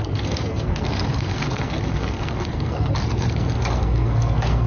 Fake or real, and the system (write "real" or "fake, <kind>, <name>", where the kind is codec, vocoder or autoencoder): fake, codec, SNAC